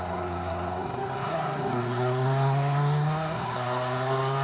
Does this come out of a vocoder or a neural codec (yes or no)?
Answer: yes